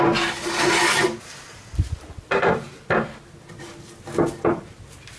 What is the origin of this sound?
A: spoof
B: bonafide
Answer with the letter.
B